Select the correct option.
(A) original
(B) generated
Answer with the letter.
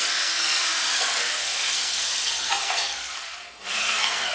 B